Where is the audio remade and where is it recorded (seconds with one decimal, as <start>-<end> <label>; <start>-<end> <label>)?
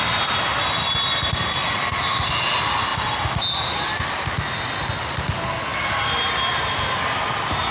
0.0-7.7 recorded